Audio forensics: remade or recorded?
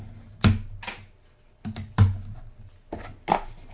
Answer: recorded